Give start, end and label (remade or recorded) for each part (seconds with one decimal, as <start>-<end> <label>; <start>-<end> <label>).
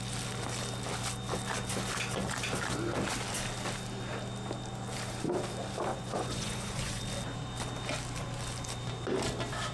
0.0-5.9 recorded; 5.9-7.0 remade; 7.0-9.7 recorded